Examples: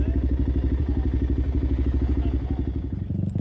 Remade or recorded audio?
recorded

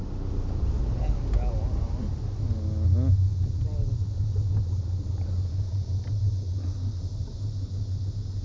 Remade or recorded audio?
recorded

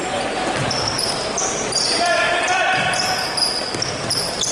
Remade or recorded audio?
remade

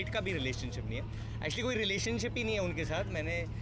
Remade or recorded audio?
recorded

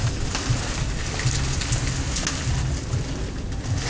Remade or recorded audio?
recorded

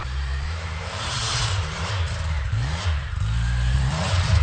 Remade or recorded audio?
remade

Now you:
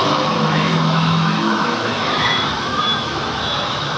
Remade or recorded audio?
remade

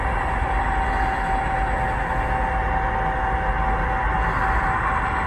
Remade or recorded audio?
recorded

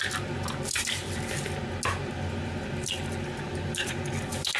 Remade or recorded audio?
recorded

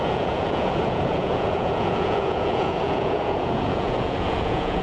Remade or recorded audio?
remade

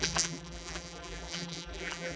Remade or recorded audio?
remade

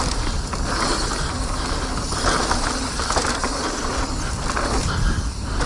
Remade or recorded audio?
recorded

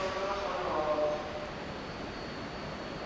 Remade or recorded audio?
recorded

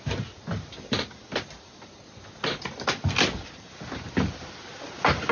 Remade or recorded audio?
recorded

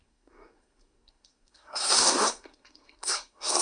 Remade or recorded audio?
remade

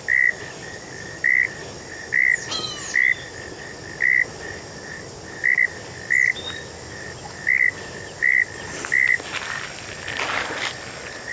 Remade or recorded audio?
recorded